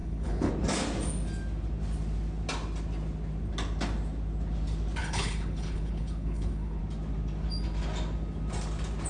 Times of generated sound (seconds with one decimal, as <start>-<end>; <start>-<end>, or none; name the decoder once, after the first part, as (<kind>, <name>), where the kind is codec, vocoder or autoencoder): 0.0-0.5 (codec, HILCodec); 5.0-6.8